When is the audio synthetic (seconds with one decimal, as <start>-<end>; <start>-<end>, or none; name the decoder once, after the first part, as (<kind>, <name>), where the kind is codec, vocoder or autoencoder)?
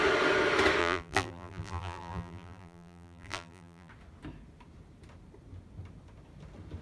0.8-3.9 (vocoder, BigVGAN v2)